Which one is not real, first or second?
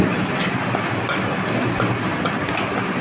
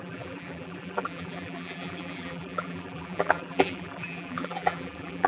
second